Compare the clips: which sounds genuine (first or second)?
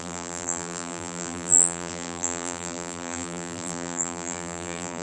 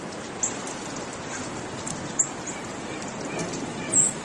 second